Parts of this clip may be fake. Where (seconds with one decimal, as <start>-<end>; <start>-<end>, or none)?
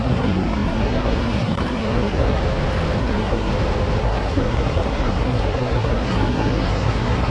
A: 0.0-2.4; 3.0-3.5; 4.0-7.3